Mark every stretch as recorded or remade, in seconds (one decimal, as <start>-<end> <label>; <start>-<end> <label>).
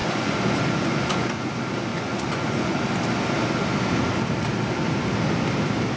0.0-1.5 remade; 1.5-1.9 recorded; 1.9-2.8 remade; 2.8-6.0 recorded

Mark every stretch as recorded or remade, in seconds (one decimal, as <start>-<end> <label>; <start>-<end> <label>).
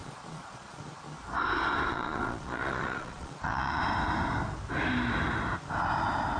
0.0-0.8 remade; 0.8-1.9 recorded; 1.9-3.8 remade; 3.8-6.4 recorded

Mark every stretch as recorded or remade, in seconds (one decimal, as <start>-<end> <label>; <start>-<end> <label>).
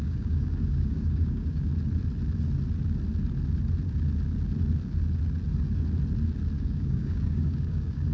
0.0-1.7 remade; 1.7-6.6 recorded; 6.6-8.1 remade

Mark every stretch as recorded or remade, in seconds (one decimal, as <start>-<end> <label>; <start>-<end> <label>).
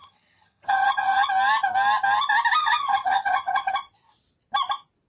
0.0-1.3 remade; 1.3-2.6 recorded; 2.6-3.7 remade; 3.7-5.1 recorded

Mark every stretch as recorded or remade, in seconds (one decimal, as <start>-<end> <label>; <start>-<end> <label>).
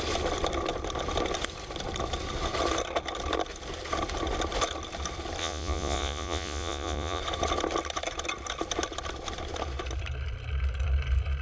0.0-5.4 recorded; 5.4-7.2 remade; 7.2-11.4 recorded